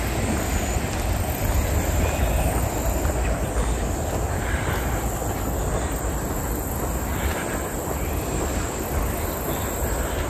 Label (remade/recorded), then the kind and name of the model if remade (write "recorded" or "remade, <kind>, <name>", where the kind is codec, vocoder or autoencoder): recorded